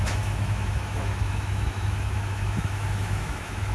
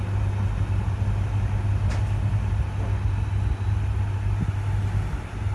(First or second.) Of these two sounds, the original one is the second